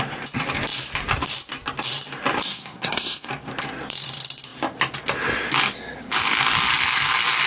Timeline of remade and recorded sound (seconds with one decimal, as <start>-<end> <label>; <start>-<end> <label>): 0.0-2.4 recorded; 2.4-3.3 remade; 3.3-7.5 recorded